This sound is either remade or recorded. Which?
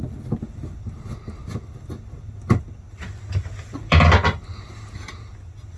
recorded